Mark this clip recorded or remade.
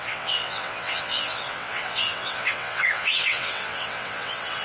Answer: remade